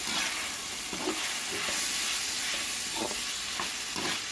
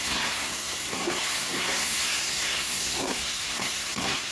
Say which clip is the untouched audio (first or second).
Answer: first